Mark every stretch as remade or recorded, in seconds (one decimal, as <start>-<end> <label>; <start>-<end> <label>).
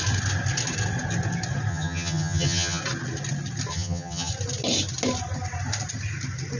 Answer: 0.0-1.7 recorded; 1.7-2.8 remade; 2.8-3.7 recorded; 3.7-4.3 remade; 4.3-6.6 recorded